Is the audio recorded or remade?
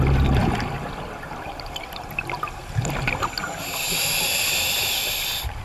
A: recorded